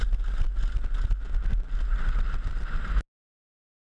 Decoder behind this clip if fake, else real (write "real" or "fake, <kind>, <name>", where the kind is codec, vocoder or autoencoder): real